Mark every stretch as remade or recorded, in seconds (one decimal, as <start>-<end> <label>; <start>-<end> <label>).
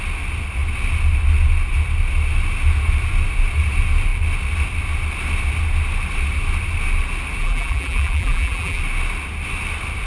0.0-7.4 recorded; 7.4-8.8 remade; 8.8-10.1 recorded